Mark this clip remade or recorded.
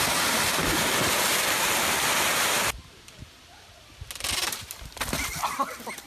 recorded